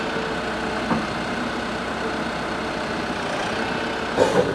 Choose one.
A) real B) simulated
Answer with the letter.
A